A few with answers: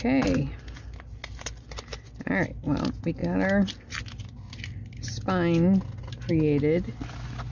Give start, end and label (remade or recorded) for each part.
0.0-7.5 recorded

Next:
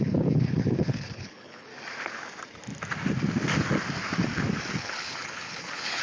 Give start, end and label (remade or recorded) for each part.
0.0-1.7 remade; 1.7-4.7 recorded; 4.7-6.0 remade